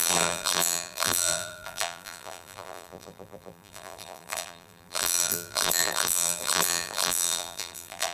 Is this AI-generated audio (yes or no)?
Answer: yes